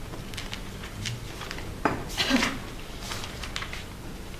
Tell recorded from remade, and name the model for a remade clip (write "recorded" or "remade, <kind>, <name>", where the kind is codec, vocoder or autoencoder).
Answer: recorded